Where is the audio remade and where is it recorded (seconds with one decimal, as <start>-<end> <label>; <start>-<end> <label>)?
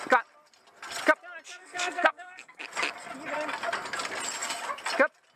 0.0-1.6 recorded; 1.6-2.6 remade; 2.6-5.4 recorded